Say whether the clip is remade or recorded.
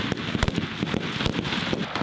recorded